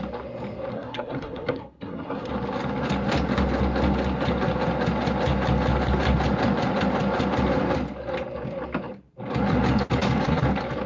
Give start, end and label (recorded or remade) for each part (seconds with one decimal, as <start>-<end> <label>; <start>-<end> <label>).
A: 0.0-0.7 recorded; 0.7-2.3 remade; 2.3-10.9 recorded